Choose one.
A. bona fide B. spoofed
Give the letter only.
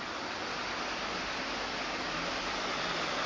A